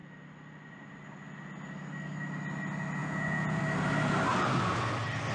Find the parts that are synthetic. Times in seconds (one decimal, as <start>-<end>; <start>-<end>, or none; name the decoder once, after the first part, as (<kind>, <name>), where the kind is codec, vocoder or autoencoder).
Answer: 3.0-3.6 (vocoder, Vocos)